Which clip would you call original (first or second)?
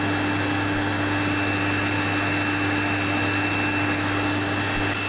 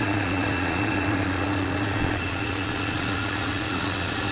first